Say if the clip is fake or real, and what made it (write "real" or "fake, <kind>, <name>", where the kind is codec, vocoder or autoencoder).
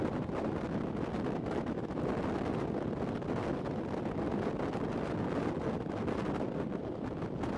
real